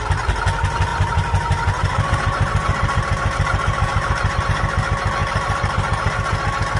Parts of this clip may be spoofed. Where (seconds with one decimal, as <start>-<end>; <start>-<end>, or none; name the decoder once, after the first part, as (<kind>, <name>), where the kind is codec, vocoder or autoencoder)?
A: 0.9-4.4 (vocoder, BigVGAN v2); 5.2-6.1

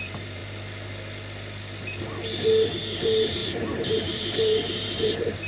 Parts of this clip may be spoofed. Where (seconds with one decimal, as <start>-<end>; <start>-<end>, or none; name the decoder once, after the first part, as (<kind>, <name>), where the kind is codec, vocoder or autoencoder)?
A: 0.0-0.4 (vocoder, BigVGAN v2); 2.8-5.5

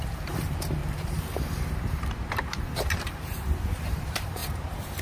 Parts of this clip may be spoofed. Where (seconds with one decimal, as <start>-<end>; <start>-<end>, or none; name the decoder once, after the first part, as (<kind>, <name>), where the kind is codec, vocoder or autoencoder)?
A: 0.0-5.0 (vocoder, BigVGAN v2)

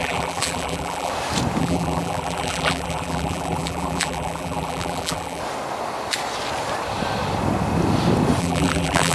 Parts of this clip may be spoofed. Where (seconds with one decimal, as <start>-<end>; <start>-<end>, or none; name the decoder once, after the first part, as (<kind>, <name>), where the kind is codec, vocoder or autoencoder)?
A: 0.0-1.1 (vocoder, BigVGAN v2); 1.6-5.4; 8.4-9.1

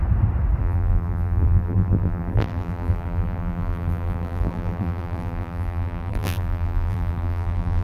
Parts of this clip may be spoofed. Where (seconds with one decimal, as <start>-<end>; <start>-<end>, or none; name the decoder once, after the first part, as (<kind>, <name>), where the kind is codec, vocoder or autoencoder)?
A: 0.6-7.8 (vocoder, BigVGAN v2)

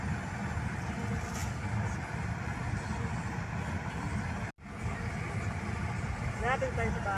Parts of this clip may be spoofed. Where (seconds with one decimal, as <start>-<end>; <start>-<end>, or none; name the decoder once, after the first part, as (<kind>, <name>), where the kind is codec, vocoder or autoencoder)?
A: none

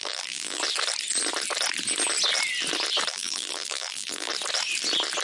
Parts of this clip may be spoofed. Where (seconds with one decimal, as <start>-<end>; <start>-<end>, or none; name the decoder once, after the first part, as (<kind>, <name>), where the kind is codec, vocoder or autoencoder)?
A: 0.0-0.6 (vocoder, BigVGAN v2); 3.1-4.3

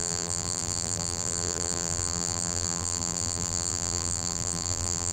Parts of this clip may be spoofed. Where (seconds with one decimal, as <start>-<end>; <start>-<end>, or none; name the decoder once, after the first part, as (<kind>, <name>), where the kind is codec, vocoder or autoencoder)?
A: 0.0-5.1 (vocoder, BigVGAN v2)